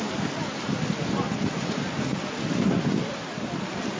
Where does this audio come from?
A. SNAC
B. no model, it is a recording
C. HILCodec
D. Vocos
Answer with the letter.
B